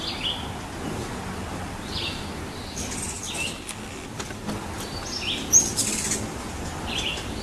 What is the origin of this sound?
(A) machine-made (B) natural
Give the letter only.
B